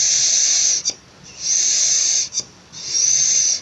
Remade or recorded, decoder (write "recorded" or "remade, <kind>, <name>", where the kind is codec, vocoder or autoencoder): recorded